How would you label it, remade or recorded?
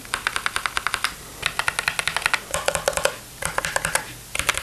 recorded